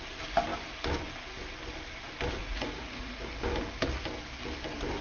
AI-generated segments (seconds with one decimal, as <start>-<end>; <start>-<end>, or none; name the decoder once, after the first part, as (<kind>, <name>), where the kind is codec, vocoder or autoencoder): 2.4-3.3 (vocoder, Vocos)